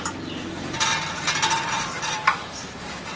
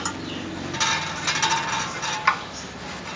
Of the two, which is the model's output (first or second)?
first